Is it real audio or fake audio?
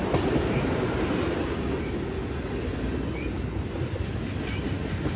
real